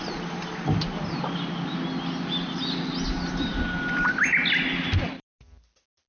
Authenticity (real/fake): real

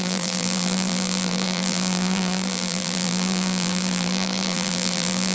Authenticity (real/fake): fake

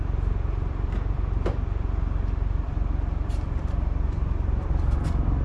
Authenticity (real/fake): fake